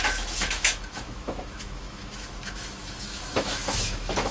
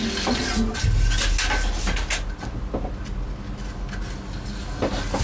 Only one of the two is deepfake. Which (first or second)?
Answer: first